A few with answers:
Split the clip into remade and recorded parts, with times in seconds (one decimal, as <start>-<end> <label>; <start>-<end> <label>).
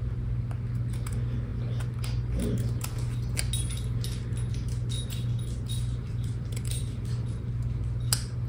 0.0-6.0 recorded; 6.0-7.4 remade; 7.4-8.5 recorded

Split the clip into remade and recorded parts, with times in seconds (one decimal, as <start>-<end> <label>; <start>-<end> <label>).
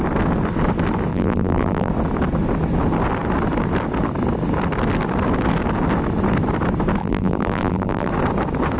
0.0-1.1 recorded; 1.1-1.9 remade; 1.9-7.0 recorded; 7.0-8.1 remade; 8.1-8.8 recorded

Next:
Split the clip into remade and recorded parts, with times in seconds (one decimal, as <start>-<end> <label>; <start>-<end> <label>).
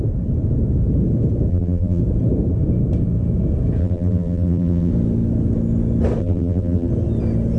0.0-1.5 recorded; 1.5-2.0 remade; 2.0-3.8 recorded; 3.8-4.9 remade; 4.9-6.2 recorded; 6.2-6.9 remade; 6.9-7.6 recorded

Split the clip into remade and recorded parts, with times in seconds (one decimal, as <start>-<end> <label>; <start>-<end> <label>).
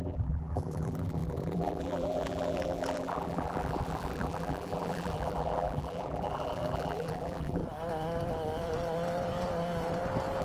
0.0-7.6 remade; 7.6-10.4 recorded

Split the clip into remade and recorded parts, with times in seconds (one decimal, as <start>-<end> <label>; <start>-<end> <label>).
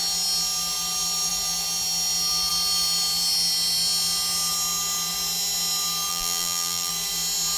0.0-6.1 recorded; 6.1-6.9 remade; 6.9-7.6 recorded